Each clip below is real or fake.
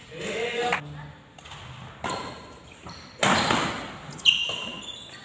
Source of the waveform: real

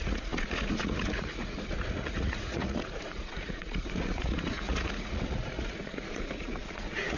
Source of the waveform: fake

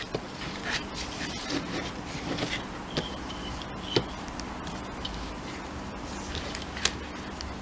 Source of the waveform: real